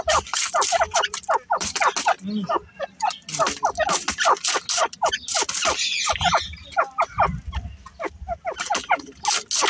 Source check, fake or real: real